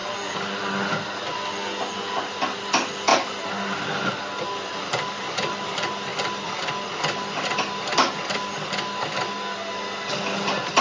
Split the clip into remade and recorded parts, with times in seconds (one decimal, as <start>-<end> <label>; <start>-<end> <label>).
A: 0.0-10.8 recorded